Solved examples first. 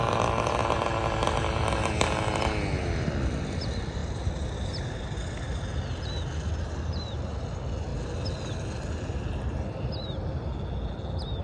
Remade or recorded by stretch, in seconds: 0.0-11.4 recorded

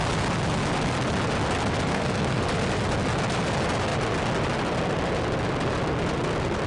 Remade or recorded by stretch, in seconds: 0.0-1.9 recorded; 1.9-2.4 remade; 2.4-6.7 recorded

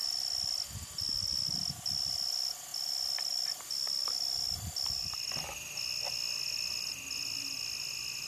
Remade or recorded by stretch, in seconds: 0.0-8.3 recorded

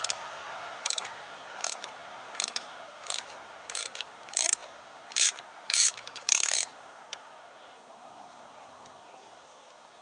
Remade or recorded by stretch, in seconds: 0.0-10.0 remade

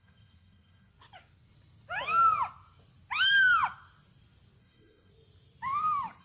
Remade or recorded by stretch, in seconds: 0.0-0.9 remade; 0.9-4.6 recorded; 4.6-5.1 remade; 5.1-6.2 recorded